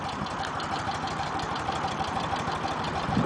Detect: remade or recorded remade